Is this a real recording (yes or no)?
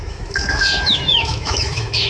no